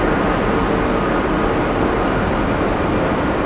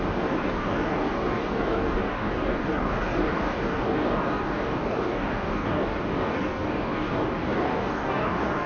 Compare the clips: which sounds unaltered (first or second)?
first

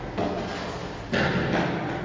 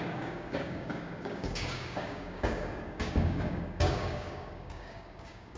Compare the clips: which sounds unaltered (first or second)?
first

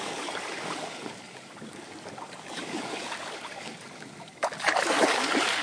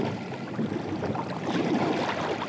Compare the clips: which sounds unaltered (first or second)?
second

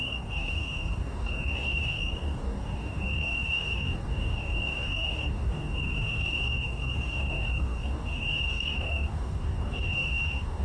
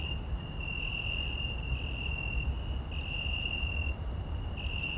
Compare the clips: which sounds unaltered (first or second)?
second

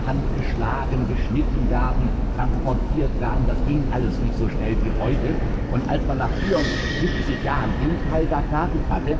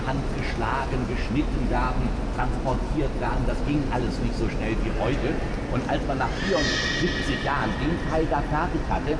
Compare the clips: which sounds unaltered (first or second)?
second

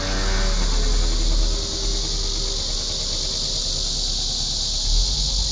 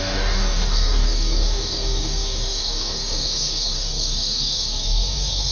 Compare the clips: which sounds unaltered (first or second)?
first